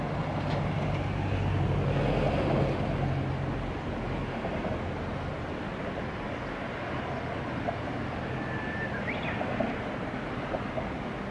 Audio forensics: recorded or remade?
recorded